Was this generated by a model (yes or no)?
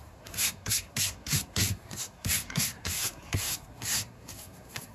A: yes